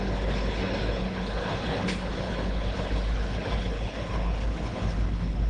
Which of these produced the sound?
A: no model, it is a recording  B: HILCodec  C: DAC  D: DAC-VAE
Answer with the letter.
B